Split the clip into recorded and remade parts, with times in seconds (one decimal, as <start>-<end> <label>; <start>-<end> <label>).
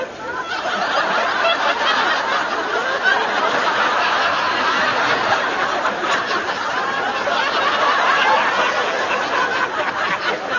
0.0-10.6 recorded